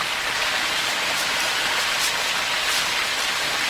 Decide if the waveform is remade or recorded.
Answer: recorded